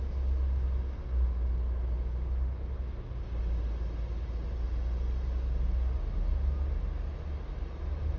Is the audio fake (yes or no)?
no